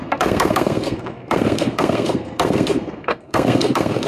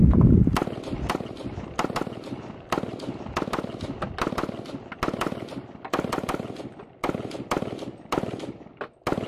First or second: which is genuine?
second